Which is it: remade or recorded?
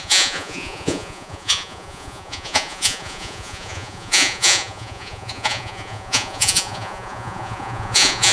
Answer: remade